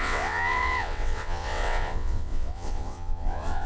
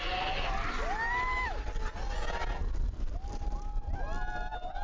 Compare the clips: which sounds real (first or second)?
second